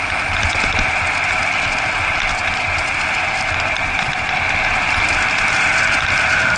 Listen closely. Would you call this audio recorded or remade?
recorded